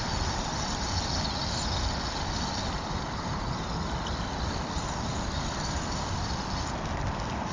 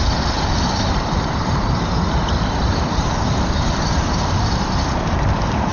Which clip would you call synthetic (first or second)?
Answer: second